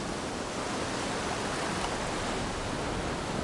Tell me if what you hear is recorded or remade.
recorded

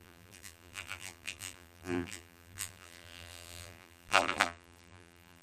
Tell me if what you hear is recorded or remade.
remade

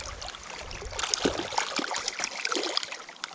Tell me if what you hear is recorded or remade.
remade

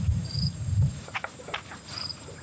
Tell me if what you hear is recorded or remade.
remade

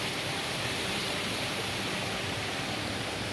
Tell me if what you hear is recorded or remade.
remade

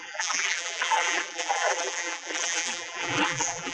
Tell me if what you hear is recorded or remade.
remade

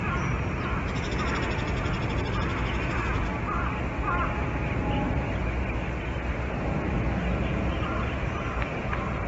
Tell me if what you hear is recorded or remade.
recorded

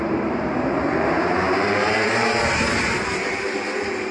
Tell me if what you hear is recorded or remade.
remade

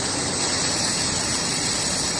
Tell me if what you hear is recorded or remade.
remade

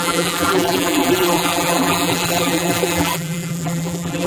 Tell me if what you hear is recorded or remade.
remade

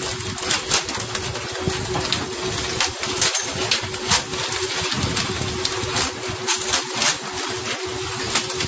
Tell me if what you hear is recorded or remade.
recorded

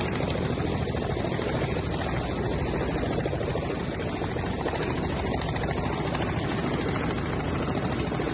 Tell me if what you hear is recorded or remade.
remade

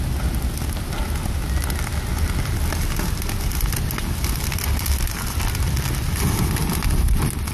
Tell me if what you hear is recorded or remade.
recorded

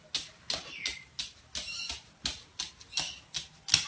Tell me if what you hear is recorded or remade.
recorded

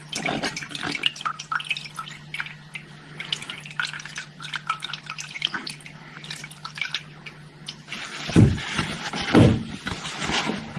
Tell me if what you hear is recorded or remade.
recorded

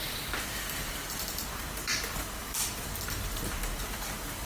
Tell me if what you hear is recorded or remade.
remade